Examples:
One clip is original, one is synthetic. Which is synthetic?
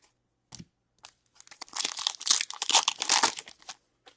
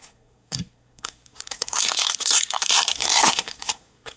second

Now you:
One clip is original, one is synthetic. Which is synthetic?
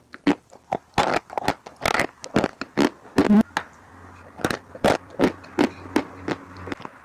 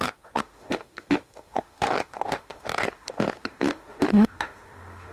second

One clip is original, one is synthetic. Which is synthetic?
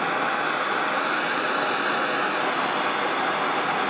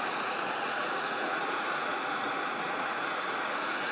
second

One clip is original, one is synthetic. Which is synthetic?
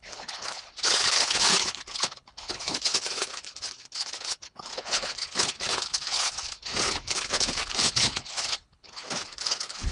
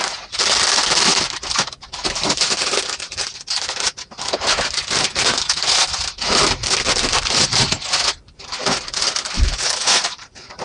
first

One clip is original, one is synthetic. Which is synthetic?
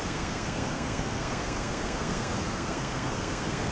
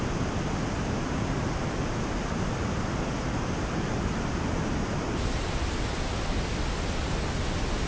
first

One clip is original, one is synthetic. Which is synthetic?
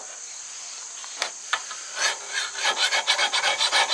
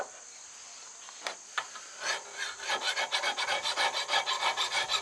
first